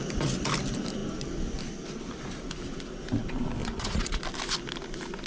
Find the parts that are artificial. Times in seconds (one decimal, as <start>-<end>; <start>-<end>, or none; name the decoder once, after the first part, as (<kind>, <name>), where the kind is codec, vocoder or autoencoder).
3.6-4.2 (vocoder, Vocos)